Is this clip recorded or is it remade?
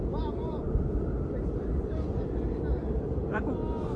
recorded